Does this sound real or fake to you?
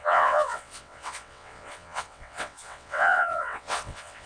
fake